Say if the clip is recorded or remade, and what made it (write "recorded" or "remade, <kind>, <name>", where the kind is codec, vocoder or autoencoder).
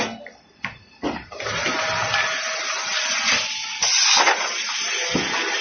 recorded